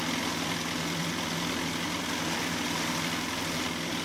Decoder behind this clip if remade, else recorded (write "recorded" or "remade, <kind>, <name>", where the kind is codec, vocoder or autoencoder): recorded